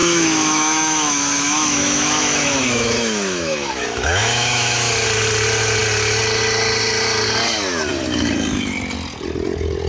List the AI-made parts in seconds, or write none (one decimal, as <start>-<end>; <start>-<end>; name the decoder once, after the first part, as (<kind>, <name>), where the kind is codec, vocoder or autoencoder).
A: 0.0-4.9 (autoencoder, DAC-VAE)